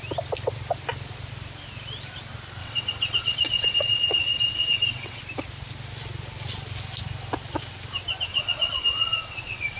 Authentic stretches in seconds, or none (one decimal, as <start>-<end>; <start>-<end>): 0.0-2.6; 5.2-8.3

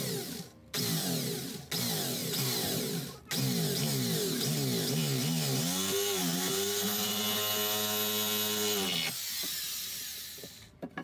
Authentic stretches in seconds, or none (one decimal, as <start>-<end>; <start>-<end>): 0.0-2.2; 2.8-6.2; 7.2-11.0

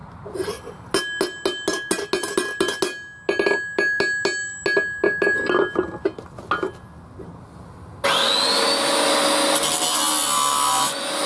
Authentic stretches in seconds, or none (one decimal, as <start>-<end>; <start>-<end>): 0.0-11.3

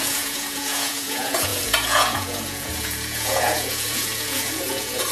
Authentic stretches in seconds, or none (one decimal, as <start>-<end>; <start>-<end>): none

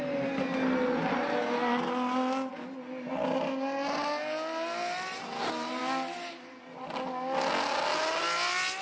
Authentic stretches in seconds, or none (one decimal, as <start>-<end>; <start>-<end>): 0.0-8.8

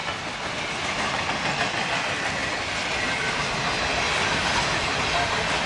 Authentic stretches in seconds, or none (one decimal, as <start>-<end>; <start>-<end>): 0.0-5.7

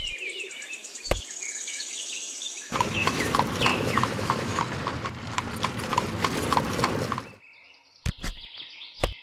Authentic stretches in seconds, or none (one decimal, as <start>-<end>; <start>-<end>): 0.0-0.8; 3.3-3.7; 4.6-9.2

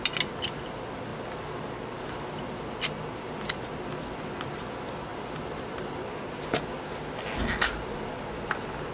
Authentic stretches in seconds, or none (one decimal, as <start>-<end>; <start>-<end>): 0.0-8.9